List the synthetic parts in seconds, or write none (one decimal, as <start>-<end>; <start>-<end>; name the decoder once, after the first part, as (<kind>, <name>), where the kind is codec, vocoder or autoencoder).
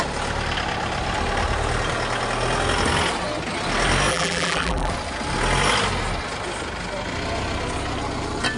4.1-4.9 (vocoder, BigVGAN v2)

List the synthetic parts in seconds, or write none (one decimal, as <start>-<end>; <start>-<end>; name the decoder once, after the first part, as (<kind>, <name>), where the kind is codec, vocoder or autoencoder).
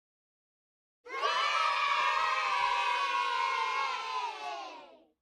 none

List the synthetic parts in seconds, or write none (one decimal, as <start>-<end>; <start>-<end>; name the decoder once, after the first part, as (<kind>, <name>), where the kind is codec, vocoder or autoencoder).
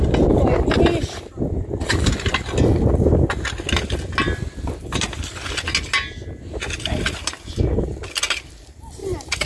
9.0-9.5 (vocoder, BigVGAN v2)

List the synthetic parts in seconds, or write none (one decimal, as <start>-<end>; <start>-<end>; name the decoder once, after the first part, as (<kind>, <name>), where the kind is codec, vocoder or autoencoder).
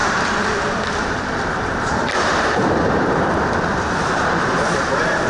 0.0-3.2 (vocoder, BigVGAN v2)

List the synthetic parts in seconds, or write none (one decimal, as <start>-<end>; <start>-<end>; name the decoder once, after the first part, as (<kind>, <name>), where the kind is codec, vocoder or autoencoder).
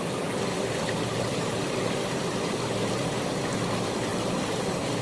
0.0-4.1 (vocoder, BigVGAN v2); 4.6-5.0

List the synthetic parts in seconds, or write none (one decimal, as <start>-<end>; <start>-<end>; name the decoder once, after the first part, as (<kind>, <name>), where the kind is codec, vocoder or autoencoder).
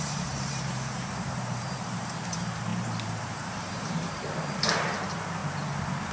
0.0-5.4 (vocoder, BigVGAN v2)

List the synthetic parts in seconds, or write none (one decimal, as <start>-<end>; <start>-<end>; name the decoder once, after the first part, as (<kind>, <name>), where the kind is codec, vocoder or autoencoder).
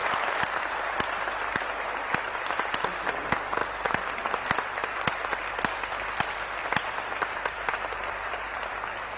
0.0-0.9 (vocoder, BigVGAN v2); 3.6-8.7